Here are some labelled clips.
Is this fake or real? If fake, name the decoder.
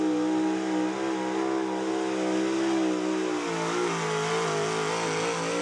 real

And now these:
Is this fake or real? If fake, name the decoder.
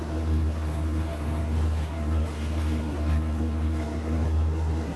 fake, codec, SNAC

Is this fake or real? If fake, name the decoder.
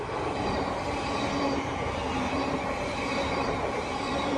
real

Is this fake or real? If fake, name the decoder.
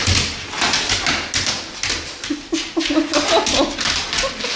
real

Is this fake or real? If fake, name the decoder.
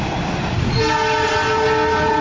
real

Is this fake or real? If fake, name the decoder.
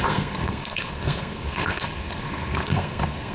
fake, codec, SNAC